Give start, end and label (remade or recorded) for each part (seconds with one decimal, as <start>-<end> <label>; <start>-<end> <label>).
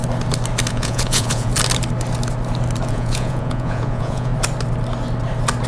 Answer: 0.0-0.7 recorded; 0.7-1.5 remade; 1.5-2.9 recorded; 2.9-4.3 remade; 4.3-5.7 recorded